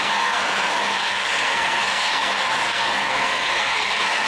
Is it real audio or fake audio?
fake